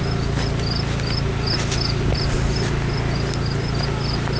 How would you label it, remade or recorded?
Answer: recorded